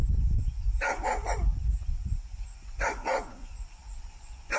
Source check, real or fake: fake